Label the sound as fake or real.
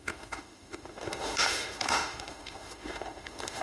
fake